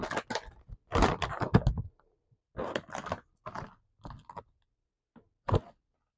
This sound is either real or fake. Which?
real